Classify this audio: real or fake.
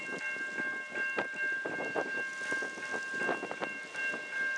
real